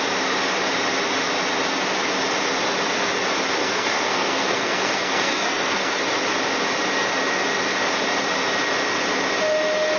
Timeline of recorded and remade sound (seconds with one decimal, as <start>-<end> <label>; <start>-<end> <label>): 0.0-3.6 recorded; 3.6-6.0 remade; 6.0-10.0 recorded

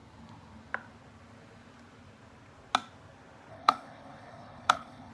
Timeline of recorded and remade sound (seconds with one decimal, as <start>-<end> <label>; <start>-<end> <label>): 0.0-3.5 recorded; 3.5-5.1 remade

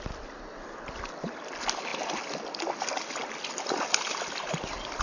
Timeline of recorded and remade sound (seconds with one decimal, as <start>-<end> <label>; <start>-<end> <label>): 0.0-5.0 recorded

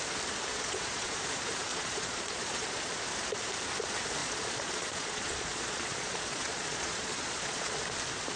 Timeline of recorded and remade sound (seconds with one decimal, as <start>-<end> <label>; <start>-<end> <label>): 0.0-0.5 recorded; 0.5-1.2 remade; 1.2-1.7 recorded; 1.7-2.9 remade; 2.9-4.2 recorded; 4.2-7.8 remade; 7.8-8.4 recorded

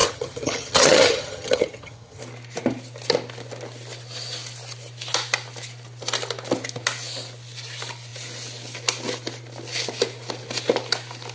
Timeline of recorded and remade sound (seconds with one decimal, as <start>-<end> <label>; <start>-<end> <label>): 0.0-2.2 remade; 2.2-11.3 recorded

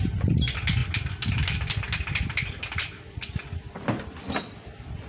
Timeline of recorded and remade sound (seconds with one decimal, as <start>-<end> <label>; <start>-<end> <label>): 0.0-5.1 recorded